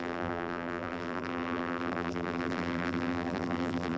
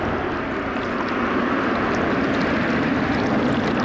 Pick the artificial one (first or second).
first